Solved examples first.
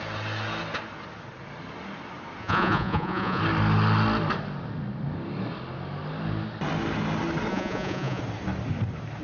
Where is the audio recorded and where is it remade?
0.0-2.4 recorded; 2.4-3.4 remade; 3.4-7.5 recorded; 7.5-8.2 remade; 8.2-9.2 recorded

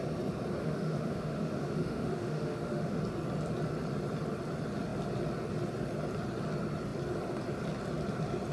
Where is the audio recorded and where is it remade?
0.0-0.6 recorded; 0.6-3.0 remade; 3.0-8.5 recorded